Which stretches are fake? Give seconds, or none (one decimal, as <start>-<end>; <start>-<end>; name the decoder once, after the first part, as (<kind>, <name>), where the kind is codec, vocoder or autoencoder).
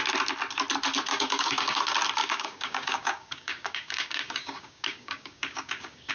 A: 1.1-1.8 (codec, DAC); 2.2-6.1